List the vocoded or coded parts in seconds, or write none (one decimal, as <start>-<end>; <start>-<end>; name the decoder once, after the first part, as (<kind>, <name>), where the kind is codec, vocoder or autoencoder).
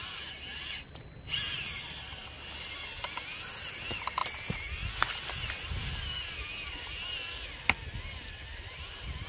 none